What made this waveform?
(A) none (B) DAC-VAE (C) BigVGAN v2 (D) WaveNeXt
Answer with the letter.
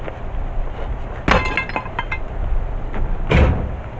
A